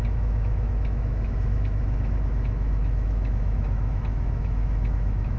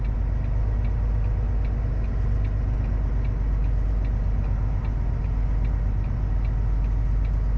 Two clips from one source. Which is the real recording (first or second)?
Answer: second